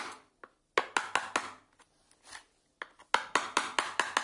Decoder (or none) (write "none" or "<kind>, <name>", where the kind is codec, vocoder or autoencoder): none